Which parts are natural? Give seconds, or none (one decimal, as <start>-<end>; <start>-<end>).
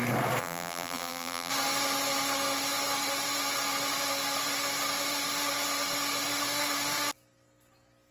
0.0-0.4; 1.5-8.1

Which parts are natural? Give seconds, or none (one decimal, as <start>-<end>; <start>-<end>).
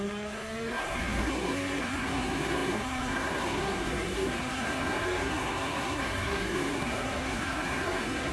none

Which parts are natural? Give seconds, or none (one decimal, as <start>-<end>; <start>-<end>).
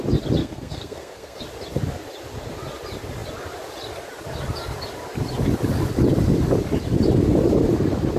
0.0-0.4; 1.4-8.2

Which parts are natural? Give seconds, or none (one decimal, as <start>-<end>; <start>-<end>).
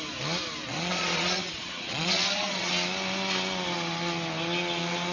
0.0-0.7; 2.7-5.1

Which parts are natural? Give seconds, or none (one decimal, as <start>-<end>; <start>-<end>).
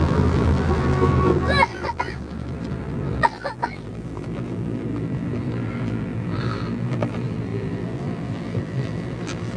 none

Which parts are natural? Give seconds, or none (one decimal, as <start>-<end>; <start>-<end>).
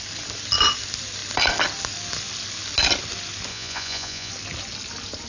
0.0-3.5; 4.3-5.3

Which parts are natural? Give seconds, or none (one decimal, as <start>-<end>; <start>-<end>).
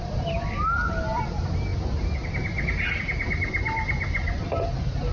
0.0-5.1